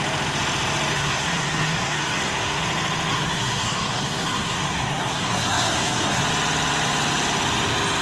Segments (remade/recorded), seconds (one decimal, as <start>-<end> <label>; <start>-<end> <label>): 0.0-0.9 recorded; 0.9-2.6 remade; 2.6-3.1 recorded; 3.1-6.2 remade; 6.2-8.0 recorded